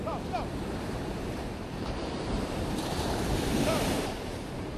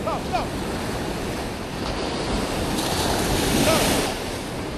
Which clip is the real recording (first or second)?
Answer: second